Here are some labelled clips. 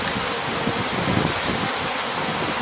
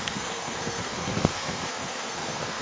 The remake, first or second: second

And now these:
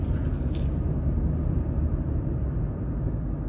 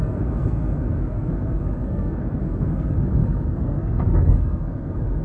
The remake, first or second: second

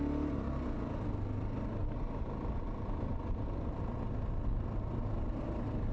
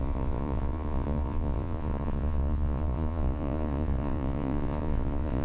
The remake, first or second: second